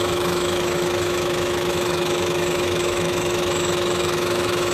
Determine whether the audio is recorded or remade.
remade